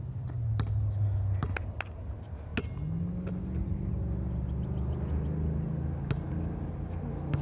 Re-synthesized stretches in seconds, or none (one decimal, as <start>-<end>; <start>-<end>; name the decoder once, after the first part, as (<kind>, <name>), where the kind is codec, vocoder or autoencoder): none